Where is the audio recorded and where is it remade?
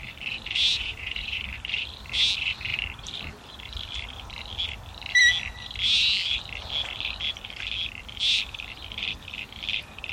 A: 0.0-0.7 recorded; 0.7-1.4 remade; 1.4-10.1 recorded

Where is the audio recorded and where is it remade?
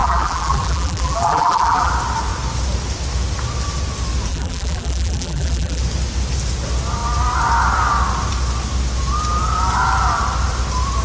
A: 0.0-1.9 remade; 1.9-4.3 recorded; 4.3-5.8 remade; 5.8-11.0 recorded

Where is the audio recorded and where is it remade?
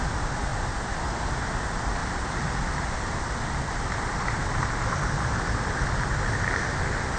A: 0.0-7.2 recorded